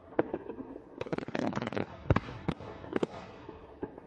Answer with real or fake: fake